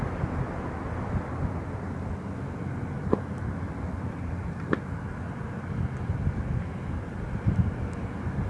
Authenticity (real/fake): real